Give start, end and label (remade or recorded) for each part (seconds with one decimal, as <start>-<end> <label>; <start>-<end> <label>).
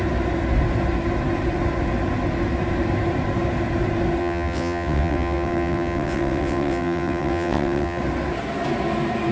0.0-4.2 recorded; 4.2-8.0 remade; 8.0-9.3 recorded